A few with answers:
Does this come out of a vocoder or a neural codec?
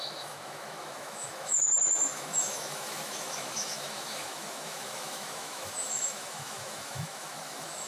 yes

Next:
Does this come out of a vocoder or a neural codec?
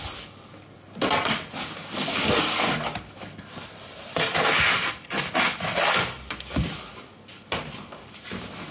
no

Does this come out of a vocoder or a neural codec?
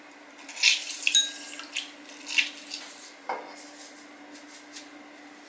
no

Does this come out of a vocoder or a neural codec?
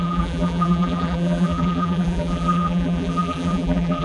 yes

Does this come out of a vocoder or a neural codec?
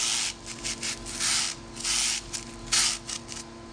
no